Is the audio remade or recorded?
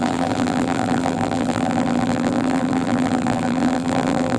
remade